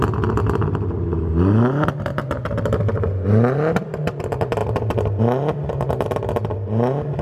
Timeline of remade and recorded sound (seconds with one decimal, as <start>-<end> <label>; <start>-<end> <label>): 0.0-7.2 recorded